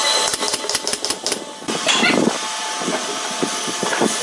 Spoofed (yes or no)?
no